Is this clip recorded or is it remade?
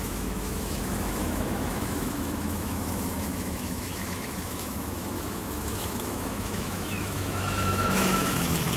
remade